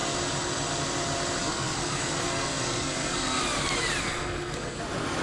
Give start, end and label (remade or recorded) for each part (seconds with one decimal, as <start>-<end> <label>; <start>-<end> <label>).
0.0-1.4 recorded; 1.4-3.4 remade; 3.4-4.0 recorded; 4.0-4.8 remade; 4.8-5.2 recorded